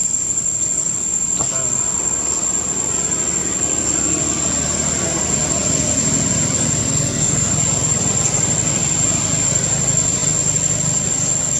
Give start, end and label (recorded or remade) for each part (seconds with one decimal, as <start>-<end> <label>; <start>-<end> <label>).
0.0-6.8 recorded; 6.8-7.5 remade; 7.5-11.6 recorded